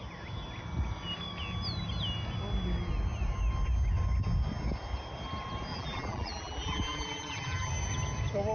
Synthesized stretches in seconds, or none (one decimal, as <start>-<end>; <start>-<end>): 5.7-7.7